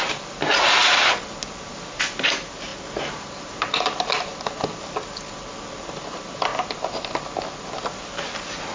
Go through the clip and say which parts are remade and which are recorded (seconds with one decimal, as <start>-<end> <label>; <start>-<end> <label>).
0.0-8.7 recorded